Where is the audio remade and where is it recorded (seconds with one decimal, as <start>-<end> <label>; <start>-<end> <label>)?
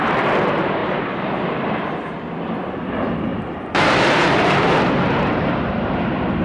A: 0.0-0.8 recorded; 0.8-1.9 remade; 1.9-3.3 recorded; 3.3-5.5 remade; 5.5-6.4 recorded